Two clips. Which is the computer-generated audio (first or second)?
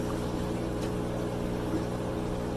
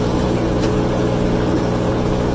second